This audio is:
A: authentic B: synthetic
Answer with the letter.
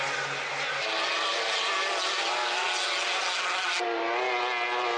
A